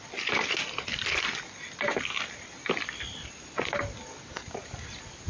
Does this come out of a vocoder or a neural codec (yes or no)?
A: no